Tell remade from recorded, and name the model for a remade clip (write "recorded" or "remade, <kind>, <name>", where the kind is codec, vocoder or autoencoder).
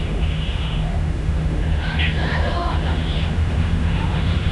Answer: remade, autoencoder, DAC-VAE